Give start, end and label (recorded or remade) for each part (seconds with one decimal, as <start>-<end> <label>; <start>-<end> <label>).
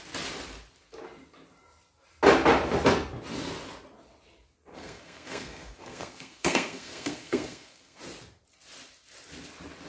0.0-4.7 recorded; 4.7-8.0 remade; 8.0-9.9 recorded